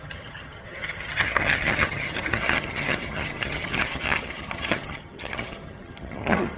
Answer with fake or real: fake